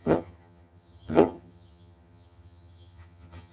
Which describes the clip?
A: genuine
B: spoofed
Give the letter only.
B